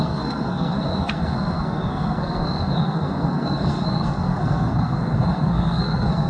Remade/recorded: remade